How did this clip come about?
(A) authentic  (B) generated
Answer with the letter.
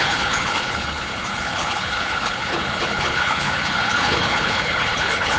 B